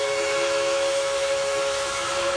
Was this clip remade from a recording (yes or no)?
yes